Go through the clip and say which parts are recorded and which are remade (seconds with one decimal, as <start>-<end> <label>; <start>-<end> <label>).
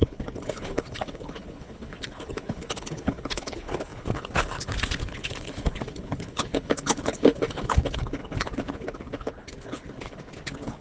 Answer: 0.0-10.8 remade